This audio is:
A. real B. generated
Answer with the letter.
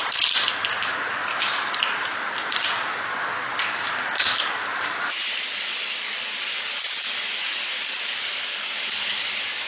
A